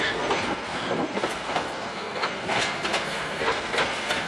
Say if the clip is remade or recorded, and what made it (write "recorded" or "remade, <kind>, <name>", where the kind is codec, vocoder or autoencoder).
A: remade, codec, SNAC